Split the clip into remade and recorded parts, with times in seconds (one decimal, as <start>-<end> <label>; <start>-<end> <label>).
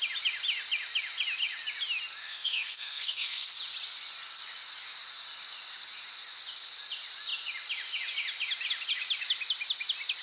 0.0-2.2 recorded; 2.2-3.5 remade; 3.5-10.2 recorded